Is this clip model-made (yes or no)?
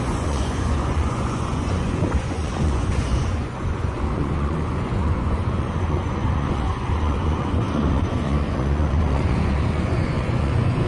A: yes